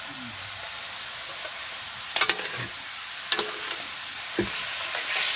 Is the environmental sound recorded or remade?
recorded